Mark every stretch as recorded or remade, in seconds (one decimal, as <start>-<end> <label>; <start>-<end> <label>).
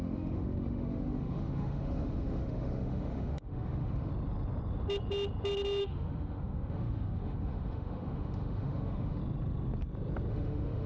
0.0-4.1 remade; 4.1-5.8 recorded; 5.8-9.2 remade; 9.2-10.3 recorded; 10.3-10.9 remade